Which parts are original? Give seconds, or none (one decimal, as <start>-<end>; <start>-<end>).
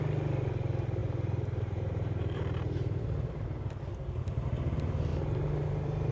0.0-1.0; 4.0-5.1